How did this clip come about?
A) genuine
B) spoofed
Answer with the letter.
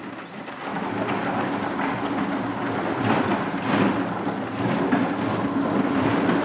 A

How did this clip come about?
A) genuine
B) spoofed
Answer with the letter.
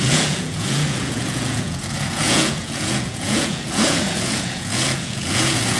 B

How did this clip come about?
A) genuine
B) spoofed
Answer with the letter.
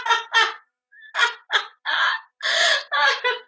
A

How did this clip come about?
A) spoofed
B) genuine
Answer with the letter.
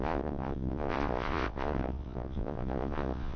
A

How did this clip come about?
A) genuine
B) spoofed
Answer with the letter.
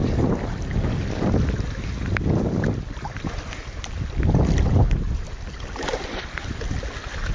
A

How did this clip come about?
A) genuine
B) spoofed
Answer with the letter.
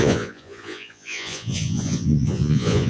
B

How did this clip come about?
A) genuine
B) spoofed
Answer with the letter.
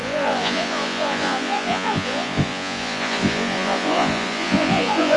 B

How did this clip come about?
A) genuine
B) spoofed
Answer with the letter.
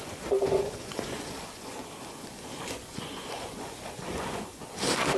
B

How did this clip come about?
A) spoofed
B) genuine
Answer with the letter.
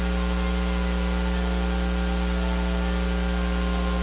B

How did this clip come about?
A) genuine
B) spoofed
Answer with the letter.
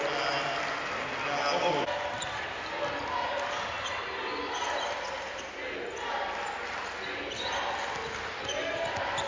A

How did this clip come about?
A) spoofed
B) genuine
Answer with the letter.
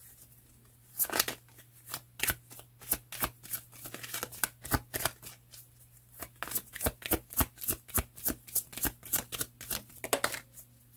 B